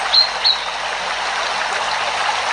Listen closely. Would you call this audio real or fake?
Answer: real